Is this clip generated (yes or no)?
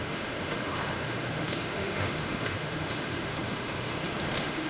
yes